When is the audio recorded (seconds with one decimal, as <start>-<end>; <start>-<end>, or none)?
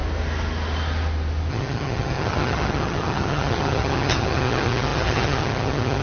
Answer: 0.0-1.5